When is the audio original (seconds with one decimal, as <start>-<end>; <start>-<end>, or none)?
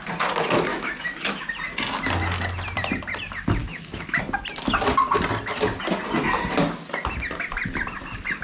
0.0-0.7; 1.5-3.6; 4.2-8.4